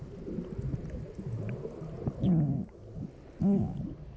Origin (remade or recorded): recorded